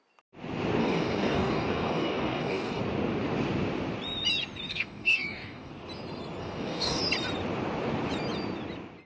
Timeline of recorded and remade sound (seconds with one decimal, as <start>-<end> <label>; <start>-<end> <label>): 0.0-0.8 recorded; 0.8-2.8 remade; 2.8-4.7 recorded; 4.7-5.7 remade; 5.7-6.4 recorded; 6.4-7.0 remade; 7.0-9.1 recorded